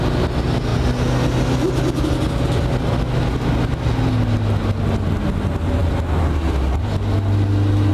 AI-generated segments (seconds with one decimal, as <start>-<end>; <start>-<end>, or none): none